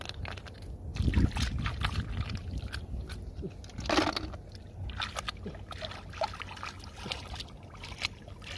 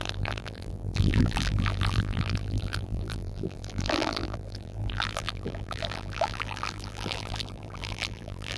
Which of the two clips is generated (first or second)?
second